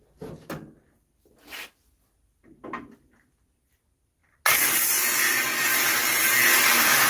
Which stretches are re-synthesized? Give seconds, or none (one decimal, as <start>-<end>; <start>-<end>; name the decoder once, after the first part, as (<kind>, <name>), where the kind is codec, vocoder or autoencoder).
none